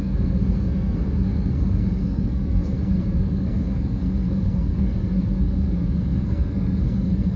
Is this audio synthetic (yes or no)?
yes